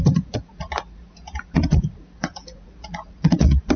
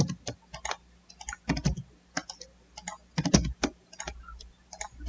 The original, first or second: second